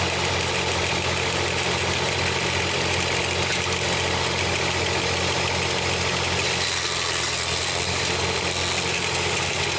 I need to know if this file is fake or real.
real